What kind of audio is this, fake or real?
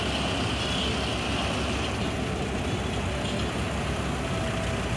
real